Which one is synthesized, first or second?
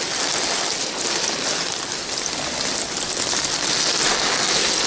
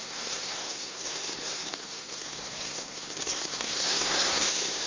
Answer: second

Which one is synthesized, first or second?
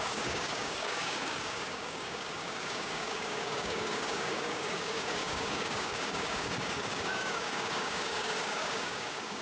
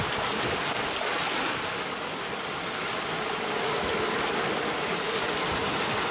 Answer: first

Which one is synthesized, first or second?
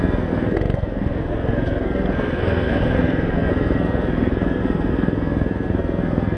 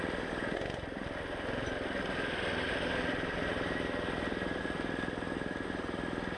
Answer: first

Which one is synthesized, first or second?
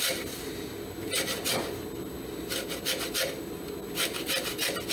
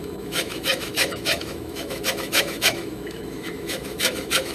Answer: second